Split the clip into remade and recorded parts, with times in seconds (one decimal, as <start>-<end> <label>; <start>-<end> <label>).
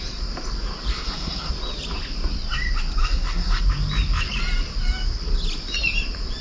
0.0-0.9 recorded; 0.9-1.5 remade; 1.5-3.0 recorded; 3.0-3.6 remade; 3.6-6.4 recorded